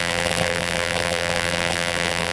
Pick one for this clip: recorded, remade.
remade